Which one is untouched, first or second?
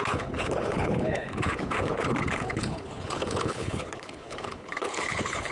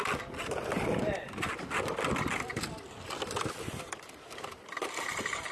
second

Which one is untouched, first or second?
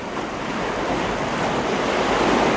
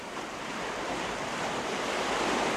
first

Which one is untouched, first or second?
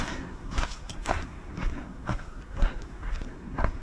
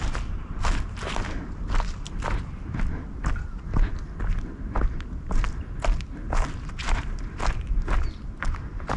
second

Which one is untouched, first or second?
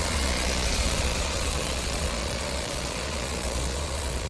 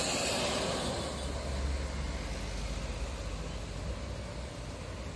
second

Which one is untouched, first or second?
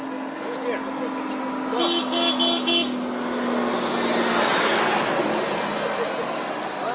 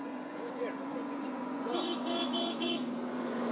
first